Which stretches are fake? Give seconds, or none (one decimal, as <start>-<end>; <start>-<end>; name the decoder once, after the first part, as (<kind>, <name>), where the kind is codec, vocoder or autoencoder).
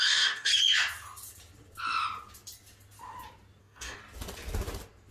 0.0-0.5 (codec, DAC); 3.6-4.0